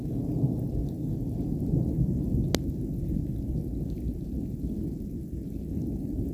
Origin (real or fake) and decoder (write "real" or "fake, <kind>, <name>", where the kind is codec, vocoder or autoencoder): real